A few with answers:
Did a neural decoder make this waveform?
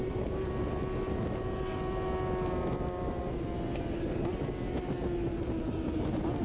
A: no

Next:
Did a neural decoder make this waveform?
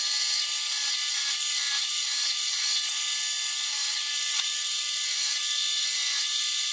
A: no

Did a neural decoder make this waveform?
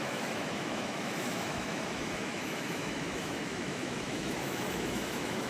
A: yes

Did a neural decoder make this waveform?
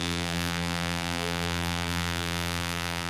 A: yes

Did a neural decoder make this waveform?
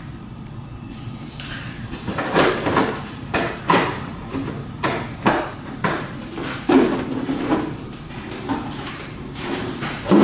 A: yes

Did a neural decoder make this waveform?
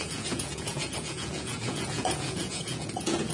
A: yes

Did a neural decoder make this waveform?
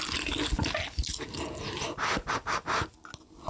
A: no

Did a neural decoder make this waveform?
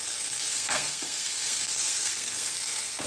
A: yes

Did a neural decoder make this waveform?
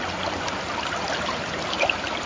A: no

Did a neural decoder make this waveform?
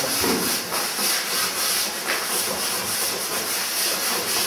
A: no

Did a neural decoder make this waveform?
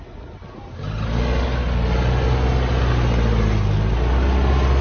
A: no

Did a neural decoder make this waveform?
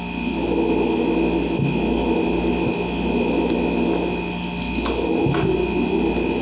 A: no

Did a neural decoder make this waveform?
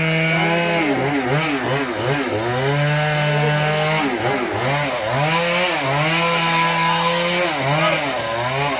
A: no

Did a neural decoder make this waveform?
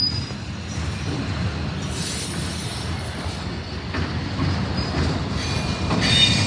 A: no